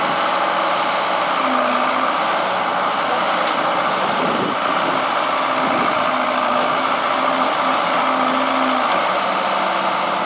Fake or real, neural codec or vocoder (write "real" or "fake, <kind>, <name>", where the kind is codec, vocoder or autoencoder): real